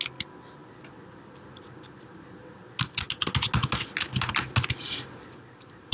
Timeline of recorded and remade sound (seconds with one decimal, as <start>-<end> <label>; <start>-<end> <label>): 0.0-5.9 recorded